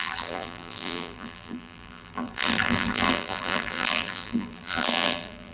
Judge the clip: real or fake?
fake